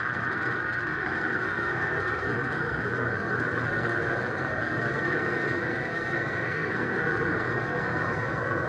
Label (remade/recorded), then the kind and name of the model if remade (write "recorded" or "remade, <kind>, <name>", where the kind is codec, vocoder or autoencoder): remade, codec, SNAC